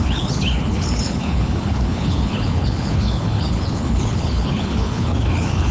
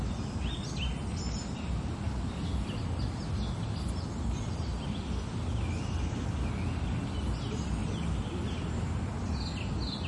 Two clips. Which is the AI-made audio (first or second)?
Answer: first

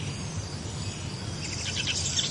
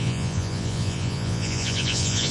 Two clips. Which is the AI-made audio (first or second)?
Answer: second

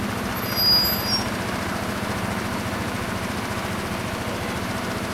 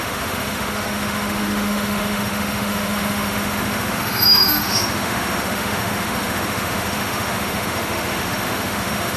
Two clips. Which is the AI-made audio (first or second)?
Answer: second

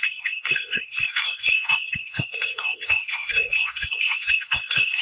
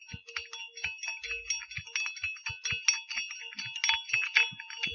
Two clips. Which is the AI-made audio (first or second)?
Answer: first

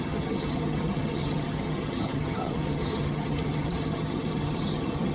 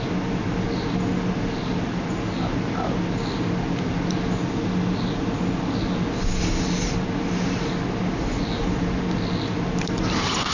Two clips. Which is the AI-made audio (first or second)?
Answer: first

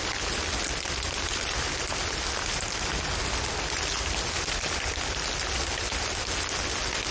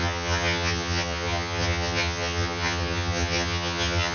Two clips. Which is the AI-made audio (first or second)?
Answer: second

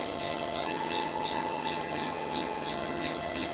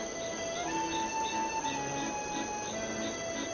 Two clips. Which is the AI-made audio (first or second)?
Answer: first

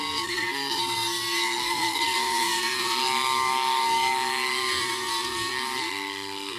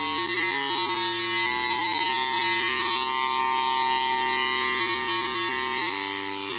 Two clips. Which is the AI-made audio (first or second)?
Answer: first